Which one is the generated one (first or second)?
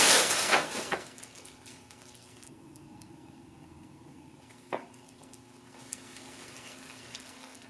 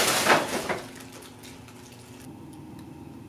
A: first